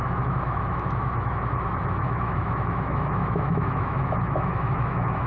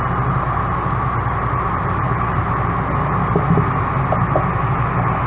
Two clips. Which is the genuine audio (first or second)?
second